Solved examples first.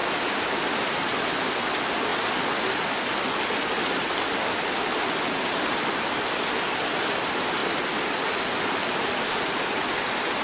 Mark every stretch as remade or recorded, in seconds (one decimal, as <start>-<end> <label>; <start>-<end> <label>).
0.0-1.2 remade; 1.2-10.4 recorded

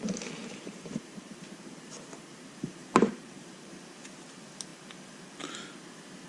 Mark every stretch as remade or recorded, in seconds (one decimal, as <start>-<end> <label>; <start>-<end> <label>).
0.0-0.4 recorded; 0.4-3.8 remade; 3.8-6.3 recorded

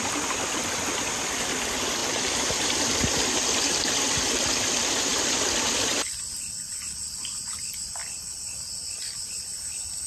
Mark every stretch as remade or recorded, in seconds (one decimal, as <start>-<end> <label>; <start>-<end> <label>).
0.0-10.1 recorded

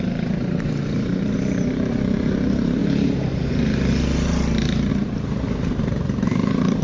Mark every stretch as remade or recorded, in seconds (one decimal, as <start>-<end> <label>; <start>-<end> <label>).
0.0-2.8 remade; 2.8-4.9 recorded; 4.9-6.8 remade

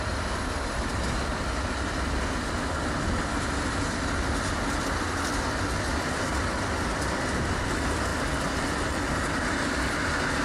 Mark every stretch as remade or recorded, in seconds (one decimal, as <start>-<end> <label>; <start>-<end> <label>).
0.0-10.4 recorded

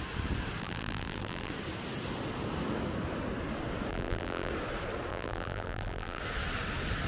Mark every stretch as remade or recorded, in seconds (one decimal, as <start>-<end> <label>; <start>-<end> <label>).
0.0-0.6 recorded; 0.6-1.5 remade; 1.5-3.9 recorded; 3.9-4.5 remade; 4.5-5.1 recorded; 5.1-6.2 remade; 6.2-7.1 recorded

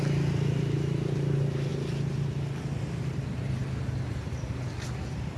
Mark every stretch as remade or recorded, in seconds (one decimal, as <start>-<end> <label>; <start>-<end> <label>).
0.0-3.6 remade; 3.6-4.2 recorded; 4.2-5.4 remade